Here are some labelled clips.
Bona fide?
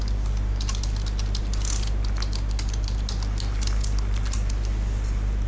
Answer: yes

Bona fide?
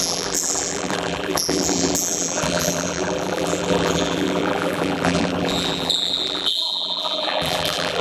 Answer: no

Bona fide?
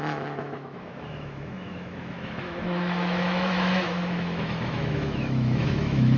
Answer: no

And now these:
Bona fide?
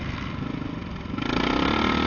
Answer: yes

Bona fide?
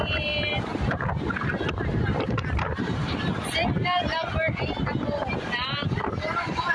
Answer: no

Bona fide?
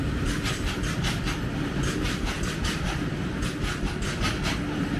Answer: yes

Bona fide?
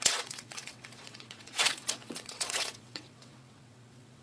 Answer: no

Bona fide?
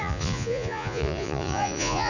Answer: no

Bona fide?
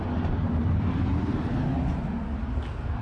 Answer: yes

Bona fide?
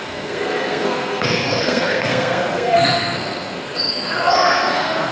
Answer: no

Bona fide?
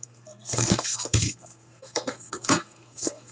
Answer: no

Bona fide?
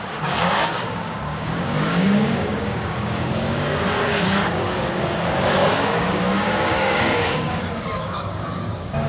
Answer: no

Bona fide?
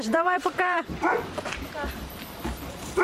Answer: no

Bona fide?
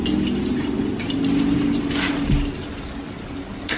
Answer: yes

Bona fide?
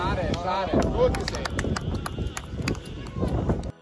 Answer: yes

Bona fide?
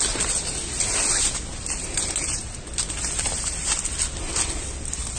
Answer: yes